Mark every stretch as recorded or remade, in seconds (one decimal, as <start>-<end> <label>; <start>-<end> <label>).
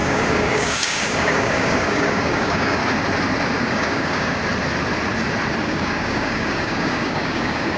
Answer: 0.0-2.8 remade; 2.8-3.6 recorded; 3.6-4.4 remade; 4.4-5.6 recorded; 5.6-7.8 remade